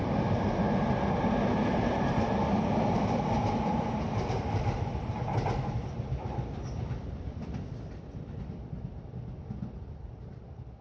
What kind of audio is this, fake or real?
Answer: real